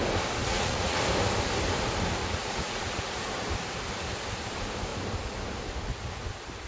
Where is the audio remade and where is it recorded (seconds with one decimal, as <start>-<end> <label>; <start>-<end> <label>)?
0.0-0.4 recorded; 0.4-1.0 remade; 1.0-2.2 recorded; 2.2-3.3 remade; 3.3-6.7 recorded